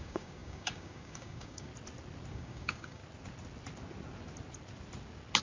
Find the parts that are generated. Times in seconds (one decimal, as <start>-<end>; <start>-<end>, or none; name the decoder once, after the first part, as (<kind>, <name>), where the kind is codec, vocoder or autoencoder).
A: 0.0-1.7 (codec, DAC); 2.3-3.0